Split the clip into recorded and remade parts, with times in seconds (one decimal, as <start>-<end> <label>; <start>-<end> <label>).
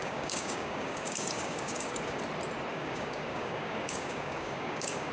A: 0.0-2.2 remade; 2.2-2.7 recorded; 2.7-5.1 remade